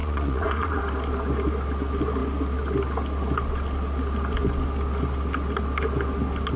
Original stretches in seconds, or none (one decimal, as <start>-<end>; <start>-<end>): 0.8-6.6